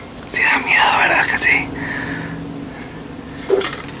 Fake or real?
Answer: real